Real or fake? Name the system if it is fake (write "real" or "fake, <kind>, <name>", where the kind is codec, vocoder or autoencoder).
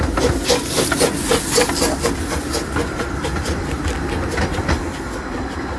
real